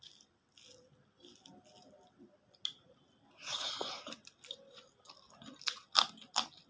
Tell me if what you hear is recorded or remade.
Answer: recorded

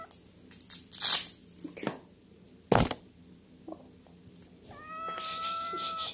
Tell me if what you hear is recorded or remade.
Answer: recorded